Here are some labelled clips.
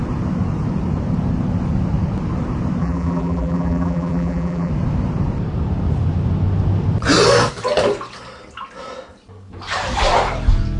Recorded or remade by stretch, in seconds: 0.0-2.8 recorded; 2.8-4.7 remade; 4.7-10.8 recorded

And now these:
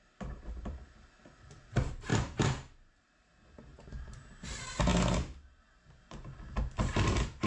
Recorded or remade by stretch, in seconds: 0.0-2.1 recorded; 2.1-3.3 remade; 3.3-3.7 recorded; 3.7-4.5 remade; 4.5-7.5 recorded